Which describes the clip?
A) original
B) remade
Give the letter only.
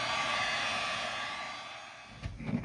A